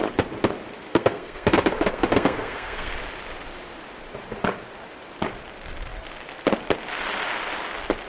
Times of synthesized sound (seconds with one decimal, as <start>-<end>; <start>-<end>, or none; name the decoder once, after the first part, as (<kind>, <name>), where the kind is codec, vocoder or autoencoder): 0.9-2.9 (codec, SNAC)